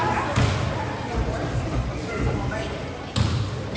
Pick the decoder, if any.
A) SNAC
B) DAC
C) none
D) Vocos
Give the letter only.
C